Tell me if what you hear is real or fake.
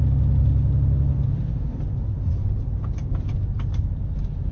real